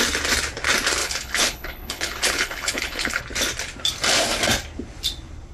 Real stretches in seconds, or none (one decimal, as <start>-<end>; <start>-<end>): 0.0-1.0; 3.2-5.5